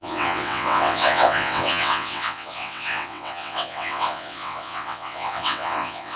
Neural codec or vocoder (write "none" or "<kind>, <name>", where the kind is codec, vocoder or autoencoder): vocoder, WaveNeXt